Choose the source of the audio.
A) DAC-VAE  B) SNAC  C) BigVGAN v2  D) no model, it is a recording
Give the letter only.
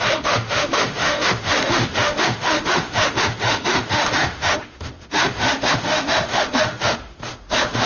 A